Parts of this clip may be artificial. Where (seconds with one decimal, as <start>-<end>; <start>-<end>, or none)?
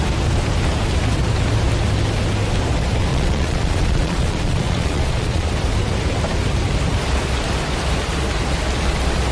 3.1-5.5